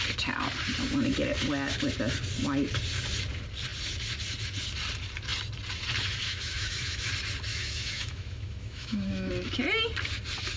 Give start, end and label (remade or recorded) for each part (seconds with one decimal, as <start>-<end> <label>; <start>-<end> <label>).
0.0-6.2 recorded; 6.2-7.1 remade; 7.1-7.5 recorded; 7.5-9.3 remade; 9.3-10.6 recorded